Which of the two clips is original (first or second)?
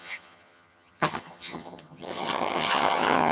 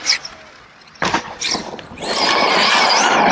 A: second